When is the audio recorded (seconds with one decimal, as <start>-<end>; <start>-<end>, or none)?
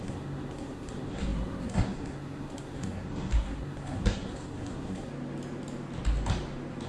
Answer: 5.1-6.9